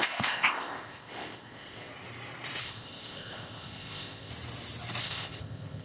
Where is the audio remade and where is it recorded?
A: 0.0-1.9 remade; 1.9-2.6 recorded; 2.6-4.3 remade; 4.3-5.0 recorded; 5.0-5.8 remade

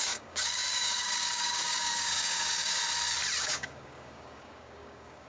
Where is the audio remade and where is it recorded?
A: 0.0-2.8 remade; 2.8-3.4 recorded; 3.4-5.3 remade

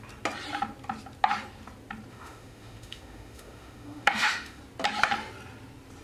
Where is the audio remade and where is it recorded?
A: 0.0-2.1 recorded; 2.1-4.6 remade; 4.6-6.0 recorded

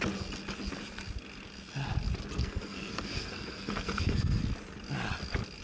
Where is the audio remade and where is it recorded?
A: 0.0-2.4 recorded; 2.4-4.4 remade; 4.4-5.6 recorded

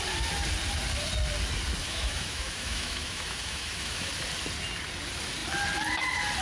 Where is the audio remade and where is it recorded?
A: 0.0-1.8 recorded; 1.8-4.1 remade; 4.1-6.4 recorded